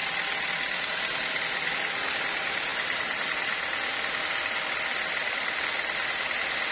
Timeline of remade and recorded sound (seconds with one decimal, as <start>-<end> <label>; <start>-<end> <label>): 0.0-6.7 recorded